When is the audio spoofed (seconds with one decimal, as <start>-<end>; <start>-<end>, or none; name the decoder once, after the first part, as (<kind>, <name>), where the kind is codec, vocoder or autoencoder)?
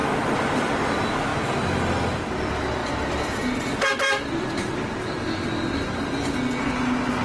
0.0-0.9 (vocoder, BigVGAN v2); 1.3-2.3; 2.8-6.0